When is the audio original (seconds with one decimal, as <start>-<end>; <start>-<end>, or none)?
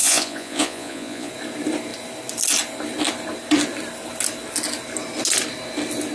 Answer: 1.3-6.1